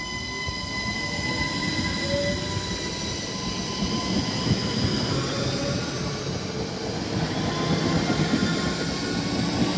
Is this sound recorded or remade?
recorded